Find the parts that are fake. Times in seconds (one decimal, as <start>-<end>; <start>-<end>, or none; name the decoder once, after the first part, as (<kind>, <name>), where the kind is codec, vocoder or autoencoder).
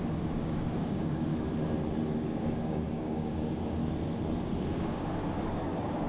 0.0-1.3 (codec, DAC); 2.2-3.8; 4.7-6.1